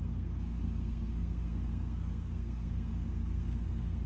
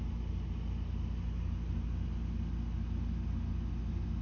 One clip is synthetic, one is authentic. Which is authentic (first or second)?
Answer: second